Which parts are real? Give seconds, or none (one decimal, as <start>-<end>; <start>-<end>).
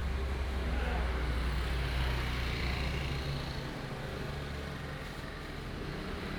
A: 0.0-6.4